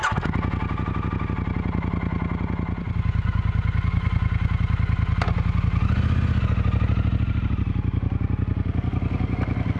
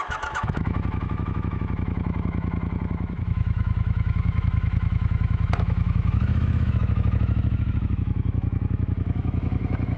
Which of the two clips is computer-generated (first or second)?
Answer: second